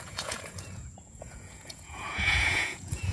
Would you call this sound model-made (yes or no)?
yes